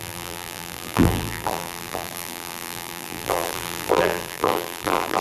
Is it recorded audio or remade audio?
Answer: remade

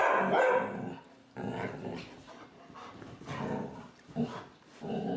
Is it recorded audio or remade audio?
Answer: recorded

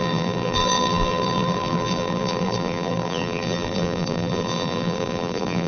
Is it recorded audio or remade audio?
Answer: remade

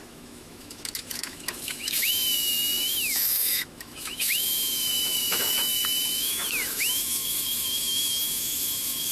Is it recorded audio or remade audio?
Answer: remade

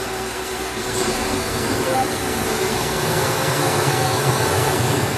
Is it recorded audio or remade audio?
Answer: remade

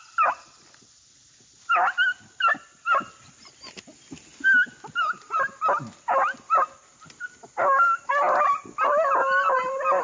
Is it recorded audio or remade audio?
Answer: recorded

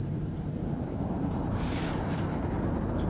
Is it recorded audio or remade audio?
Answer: remade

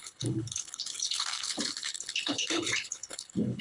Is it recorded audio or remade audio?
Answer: remade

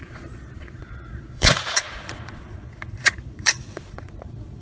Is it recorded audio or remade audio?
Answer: remade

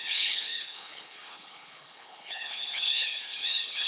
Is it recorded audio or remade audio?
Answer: remade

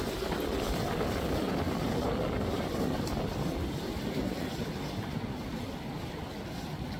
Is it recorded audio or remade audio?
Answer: recorded